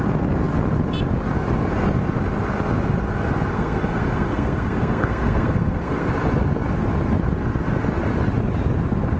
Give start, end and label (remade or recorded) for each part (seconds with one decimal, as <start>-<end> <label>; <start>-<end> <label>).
0.0-3.5 recorded; 3.5-6.1 remade; 6.1-9.2 recorded